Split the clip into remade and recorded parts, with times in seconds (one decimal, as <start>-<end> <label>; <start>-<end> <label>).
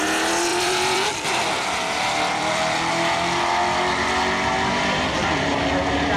0.0-0.5 recorded; 0.5-2.9 remade; 2.9-6.2 recorded